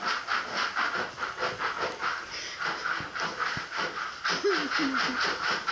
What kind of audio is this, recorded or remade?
recorded